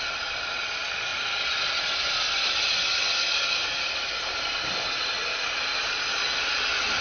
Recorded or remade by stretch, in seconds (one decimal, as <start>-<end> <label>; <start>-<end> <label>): 0.0-7.0 recorded